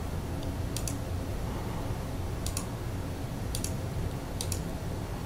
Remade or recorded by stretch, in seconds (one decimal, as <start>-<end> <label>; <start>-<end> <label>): 0.0-1.3 recorded; 1.3-2.1 remade; 2.1-3.3 recorded; 3.3-5.3 remade